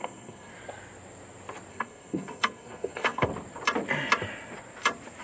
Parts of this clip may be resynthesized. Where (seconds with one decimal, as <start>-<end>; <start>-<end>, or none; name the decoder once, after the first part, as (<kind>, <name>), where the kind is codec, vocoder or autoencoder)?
0.0-0.5 (codec, SNAC); 1.7-3.3